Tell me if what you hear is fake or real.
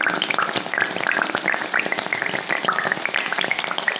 real